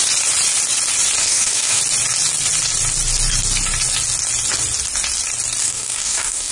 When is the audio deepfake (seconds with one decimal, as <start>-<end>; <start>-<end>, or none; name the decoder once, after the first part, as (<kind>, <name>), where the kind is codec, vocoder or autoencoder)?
1.2-1.8 (codec, DAC); 5.6-6.5